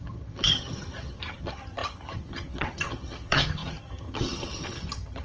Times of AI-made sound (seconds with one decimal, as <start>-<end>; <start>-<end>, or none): 0.0-5.2